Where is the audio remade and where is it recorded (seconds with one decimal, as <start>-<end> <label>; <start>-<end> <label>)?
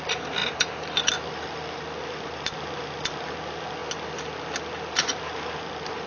0.0-6.1 recorded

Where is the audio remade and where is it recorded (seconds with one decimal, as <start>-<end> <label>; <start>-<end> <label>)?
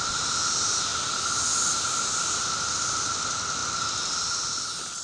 0.0-5.0 recorded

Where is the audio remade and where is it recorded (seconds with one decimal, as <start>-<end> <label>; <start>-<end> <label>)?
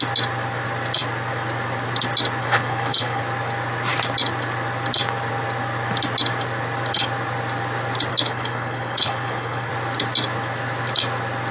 0.0-2.4 recorded; 2.4-3.2 remade; 3.2-8.1 recorded; 8.1-9.7 remade; 9.7-11.5 recorded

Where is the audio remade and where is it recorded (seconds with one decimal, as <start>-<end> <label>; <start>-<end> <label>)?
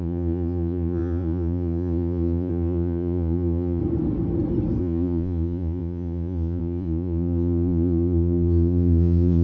0.0-3.8 remade; 3.8-4.8 recorded; 4.8-9.4 remade